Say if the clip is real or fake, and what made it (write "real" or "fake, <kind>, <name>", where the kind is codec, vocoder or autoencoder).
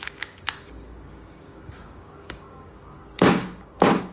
fake, codec, DAC